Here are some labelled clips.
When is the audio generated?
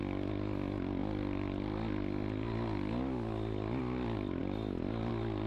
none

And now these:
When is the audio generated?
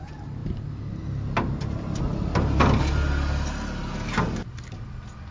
none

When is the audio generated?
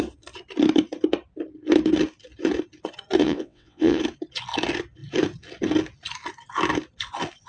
3.2-4.0 (vocoder, WaveNeXt)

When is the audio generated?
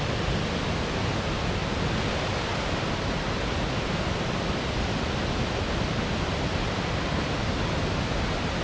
2.5-7.5 (vocoder, BigVGAN v2)